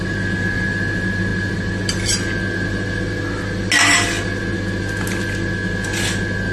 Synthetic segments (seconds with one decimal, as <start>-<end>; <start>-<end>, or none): none